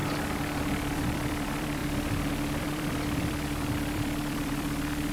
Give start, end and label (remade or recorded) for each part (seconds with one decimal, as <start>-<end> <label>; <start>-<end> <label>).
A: 0.0-0.6 recorded; 0.6-1.8 remade; 1.8-2.6 recorded; 2.6-5.1 remade